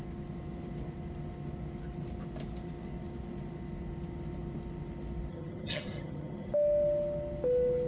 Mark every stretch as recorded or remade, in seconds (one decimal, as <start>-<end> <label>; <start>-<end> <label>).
0.0-5.3 recorded; 5.3-6.5 remade; 6.5-7.9 recorded